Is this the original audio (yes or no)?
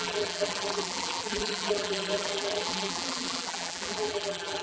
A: no